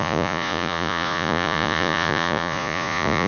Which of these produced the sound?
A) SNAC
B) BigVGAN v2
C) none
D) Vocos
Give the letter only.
D